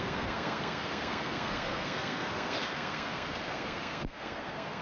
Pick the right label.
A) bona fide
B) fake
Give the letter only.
B